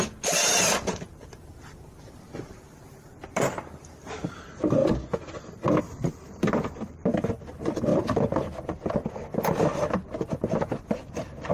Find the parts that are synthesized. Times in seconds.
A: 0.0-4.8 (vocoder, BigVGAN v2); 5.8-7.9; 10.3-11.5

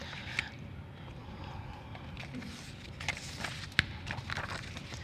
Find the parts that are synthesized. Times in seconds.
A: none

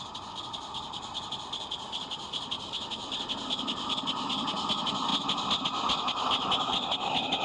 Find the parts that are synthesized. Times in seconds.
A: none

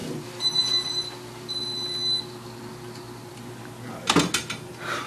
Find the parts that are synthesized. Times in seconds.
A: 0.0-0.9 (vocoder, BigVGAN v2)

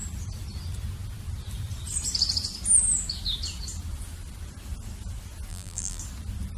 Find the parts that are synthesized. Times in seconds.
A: 5.5-6.0 (vocoder, BigVGAN v2)

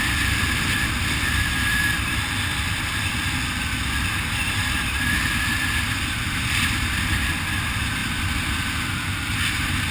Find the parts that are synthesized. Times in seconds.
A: none

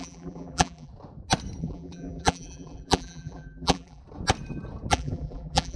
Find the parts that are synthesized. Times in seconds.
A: 0.0-0.9 (vocoder, BigVGAN v2); 1.6-4.0; 4.9-5.8

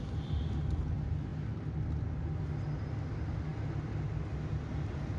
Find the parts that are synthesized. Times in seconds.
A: none